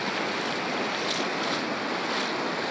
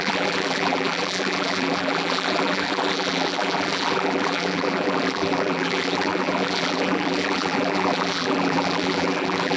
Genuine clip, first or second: first